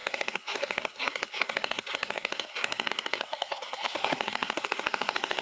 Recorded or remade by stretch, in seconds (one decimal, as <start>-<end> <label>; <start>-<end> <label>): 0.0-5.4 remade